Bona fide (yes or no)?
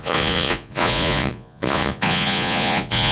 no